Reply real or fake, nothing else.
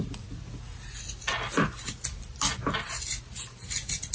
real